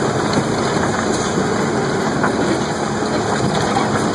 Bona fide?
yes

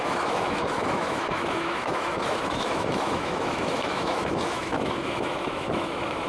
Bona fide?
no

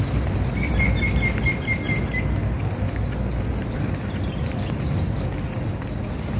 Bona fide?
yes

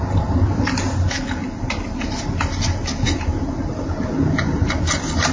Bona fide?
yes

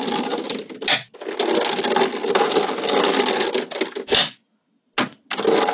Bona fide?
yes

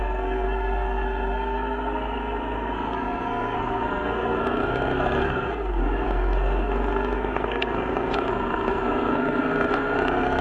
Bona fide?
no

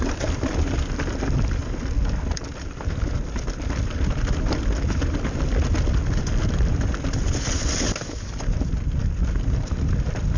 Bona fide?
yes